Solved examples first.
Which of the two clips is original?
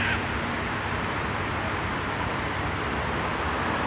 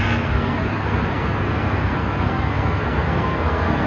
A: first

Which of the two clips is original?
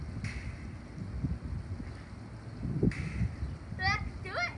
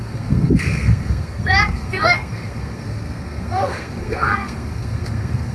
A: first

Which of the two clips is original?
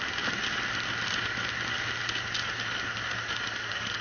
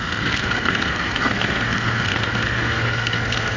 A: first